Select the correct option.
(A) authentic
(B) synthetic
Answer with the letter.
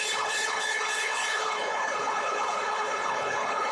B